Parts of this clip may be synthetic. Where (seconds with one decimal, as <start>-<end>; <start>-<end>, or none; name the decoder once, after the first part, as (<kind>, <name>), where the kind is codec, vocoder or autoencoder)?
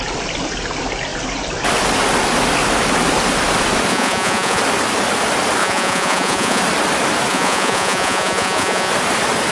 3.9-4.6 (vocoder, Vocos); 5.6-6.6; 7.3-8.9